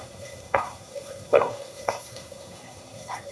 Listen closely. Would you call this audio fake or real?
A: fake